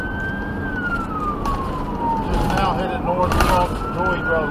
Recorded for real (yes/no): yes